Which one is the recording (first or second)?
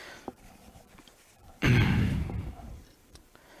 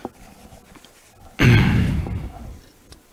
second